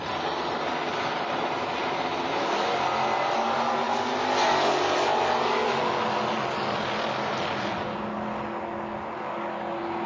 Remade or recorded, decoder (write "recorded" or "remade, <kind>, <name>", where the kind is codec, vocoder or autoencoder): recorded